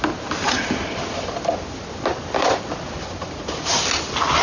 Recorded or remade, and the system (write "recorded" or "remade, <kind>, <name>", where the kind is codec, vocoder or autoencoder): recorded